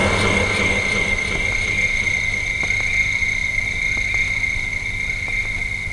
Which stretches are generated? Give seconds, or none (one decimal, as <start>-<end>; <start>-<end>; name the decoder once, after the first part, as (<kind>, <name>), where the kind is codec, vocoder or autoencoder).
none